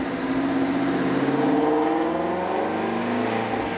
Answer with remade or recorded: recorded